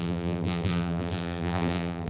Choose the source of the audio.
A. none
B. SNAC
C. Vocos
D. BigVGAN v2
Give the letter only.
D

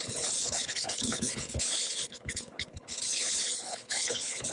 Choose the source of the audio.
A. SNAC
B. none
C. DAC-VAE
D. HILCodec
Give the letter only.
D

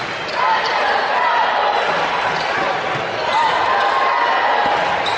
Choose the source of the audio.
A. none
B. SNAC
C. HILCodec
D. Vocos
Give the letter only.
A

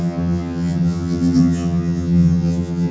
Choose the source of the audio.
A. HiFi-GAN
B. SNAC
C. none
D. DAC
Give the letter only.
A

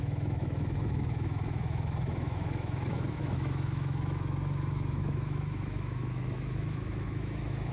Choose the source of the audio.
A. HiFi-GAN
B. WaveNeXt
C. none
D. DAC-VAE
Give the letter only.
D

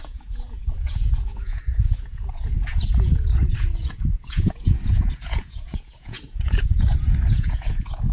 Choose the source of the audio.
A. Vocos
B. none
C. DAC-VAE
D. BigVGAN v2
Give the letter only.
A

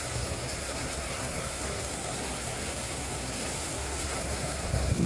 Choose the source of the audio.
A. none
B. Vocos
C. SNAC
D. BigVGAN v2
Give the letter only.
C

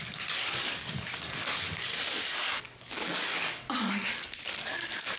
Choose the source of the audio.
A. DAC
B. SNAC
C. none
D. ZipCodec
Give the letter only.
A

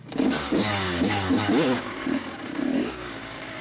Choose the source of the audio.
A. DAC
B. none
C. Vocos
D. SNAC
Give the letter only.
A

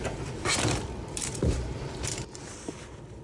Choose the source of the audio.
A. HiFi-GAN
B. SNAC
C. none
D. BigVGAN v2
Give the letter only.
D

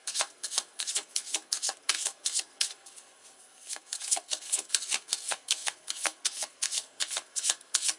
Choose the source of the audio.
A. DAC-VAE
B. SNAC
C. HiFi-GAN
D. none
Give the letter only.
B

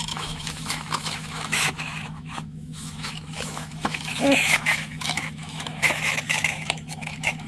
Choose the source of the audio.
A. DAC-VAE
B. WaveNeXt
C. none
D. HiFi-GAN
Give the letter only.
A